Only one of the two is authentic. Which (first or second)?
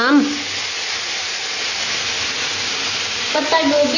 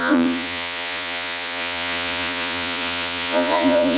first